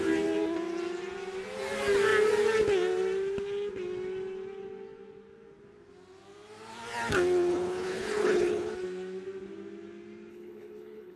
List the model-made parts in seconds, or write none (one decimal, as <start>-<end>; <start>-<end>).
7.5-8.7; 10.3-11.2